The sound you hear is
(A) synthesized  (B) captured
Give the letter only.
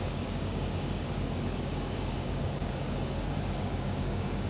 A